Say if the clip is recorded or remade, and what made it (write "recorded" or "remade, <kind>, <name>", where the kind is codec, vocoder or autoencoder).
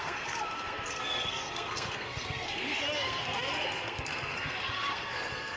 remade, codec, SNAC